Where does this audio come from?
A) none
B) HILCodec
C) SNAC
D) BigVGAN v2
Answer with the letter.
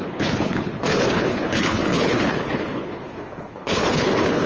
B